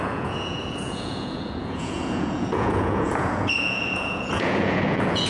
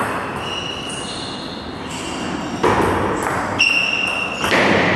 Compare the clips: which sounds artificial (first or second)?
first